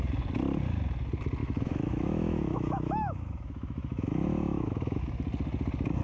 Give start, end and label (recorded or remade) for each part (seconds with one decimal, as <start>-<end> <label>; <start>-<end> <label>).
0.0-1.4 recorded; 1.4-5.0 remade; 5.0-6.0 recorded